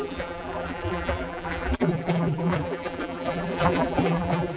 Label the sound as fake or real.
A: fake